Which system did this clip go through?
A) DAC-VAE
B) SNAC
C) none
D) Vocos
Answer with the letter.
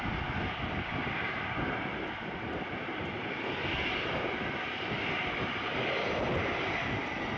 C